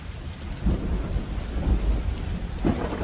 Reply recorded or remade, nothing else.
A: recorded